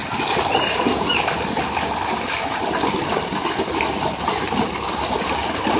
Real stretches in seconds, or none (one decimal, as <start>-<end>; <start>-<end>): 0.0-1.0